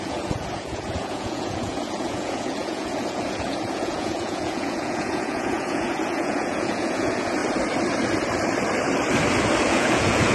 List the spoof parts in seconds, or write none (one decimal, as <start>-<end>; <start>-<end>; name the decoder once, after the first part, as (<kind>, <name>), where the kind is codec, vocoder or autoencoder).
0.0-7.4 (vocoder, Vocos); 9.6-10.3